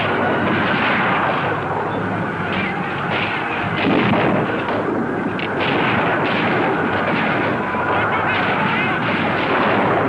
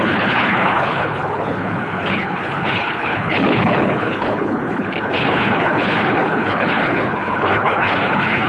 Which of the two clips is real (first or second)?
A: first